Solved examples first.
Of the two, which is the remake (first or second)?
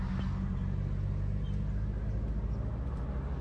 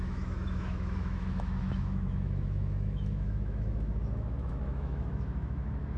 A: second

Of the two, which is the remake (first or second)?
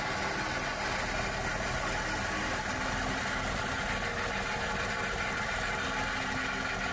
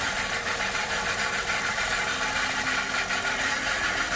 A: second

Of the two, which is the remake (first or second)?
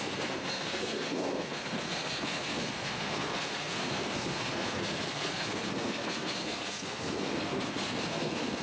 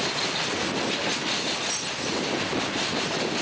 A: first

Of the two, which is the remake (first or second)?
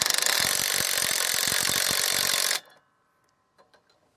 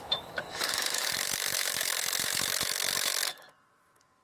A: second